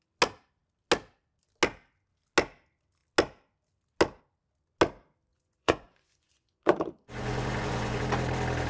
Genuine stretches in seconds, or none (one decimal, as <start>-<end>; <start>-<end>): 0.0-5.3; 8.0-8.7